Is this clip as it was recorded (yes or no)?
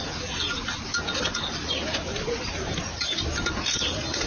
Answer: yes